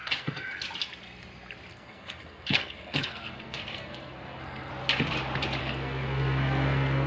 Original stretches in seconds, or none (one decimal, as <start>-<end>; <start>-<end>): 0.6-1.7; 4.7-5.6